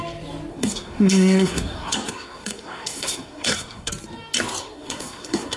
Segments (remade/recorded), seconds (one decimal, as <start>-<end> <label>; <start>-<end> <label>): 0.0-0.5 recorded; 0.5-3.9 remade; 3.9-4.6 recorded; 4.6-5.6 remade